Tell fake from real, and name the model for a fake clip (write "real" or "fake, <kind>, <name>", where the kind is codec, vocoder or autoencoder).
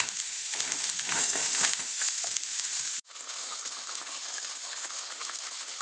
fake, autoencoder, DAC-VAE